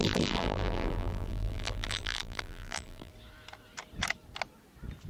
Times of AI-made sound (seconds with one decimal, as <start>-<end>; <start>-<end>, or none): 0.0-3.1